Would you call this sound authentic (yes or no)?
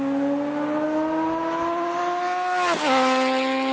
yes